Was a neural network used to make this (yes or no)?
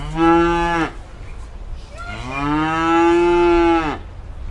no